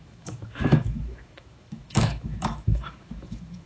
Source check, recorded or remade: remade